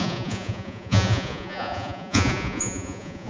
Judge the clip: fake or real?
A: fake